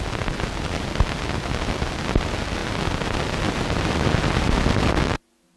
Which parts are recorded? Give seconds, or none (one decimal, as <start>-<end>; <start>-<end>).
0.0-5.6

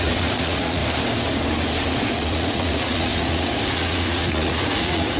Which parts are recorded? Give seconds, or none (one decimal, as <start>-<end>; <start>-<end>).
0.8-1.9

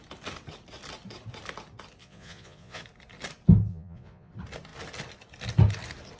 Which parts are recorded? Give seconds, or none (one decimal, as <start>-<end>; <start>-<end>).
0.0-2.0; 2.8-3.7; 4.3-6.2

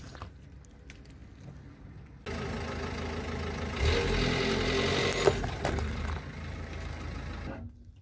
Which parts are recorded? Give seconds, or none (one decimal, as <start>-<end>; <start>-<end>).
0.0-8.0

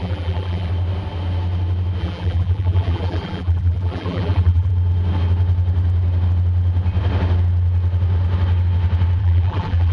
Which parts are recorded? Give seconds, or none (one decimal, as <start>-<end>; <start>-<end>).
0.7-2.0; 4.7-9.2